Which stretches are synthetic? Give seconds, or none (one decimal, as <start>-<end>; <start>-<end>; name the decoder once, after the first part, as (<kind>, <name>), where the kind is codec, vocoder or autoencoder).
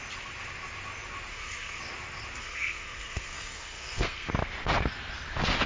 1.3-1.8 (codec, SNAC); 2.4-4.3